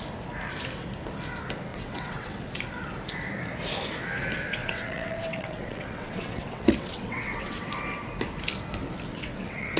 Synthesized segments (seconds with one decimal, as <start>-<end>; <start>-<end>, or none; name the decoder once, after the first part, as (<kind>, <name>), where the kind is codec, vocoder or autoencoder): 1.7-2.5 (vocoder, WaveNeXt); 4.6-7.7; 9.1-9.8

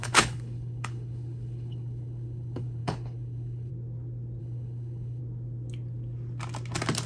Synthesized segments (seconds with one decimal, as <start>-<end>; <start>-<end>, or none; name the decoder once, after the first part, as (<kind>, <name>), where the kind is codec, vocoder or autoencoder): 0.0-3.7 (codec, HILCodec); 4.4-5.2

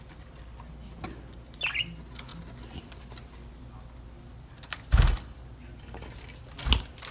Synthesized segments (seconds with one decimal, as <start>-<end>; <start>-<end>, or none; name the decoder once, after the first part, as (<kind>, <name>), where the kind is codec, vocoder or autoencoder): none

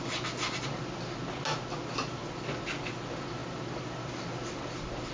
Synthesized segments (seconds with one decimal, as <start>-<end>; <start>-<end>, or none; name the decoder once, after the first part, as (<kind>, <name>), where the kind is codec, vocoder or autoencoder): none

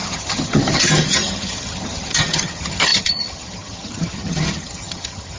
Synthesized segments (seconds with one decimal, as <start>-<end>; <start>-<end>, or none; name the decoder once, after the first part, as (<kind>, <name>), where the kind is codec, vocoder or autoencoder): 0.0-5.4 (vocoder, HiFi-GAN)

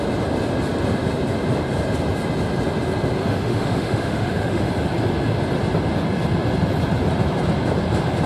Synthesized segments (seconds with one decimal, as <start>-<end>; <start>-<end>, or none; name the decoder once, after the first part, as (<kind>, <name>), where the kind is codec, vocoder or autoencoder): 3.2-4.7 (autoencoder, DAC-VAE)

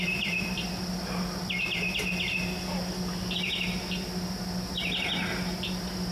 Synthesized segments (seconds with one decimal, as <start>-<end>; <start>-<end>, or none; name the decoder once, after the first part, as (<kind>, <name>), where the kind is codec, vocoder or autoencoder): 0.0-0.7 (vocoder, BigVGAN v2)